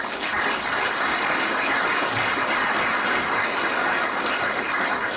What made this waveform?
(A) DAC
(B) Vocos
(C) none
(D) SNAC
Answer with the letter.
A